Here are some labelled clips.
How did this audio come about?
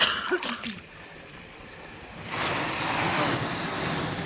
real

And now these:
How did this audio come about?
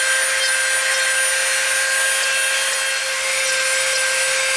real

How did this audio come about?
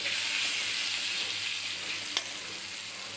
real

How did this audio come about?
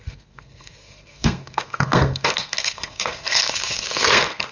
fake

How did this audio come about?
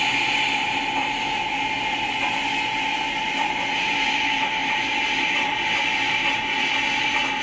real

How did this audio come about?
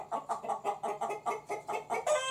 real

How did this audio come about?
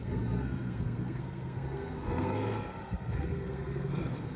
fake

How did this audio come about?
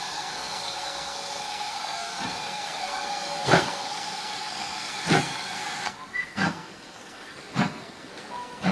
fake